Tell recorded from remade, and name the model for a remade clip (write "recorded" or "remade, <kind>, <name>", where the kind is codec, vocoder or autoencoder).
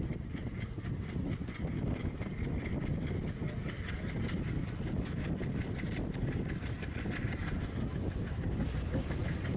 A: recorded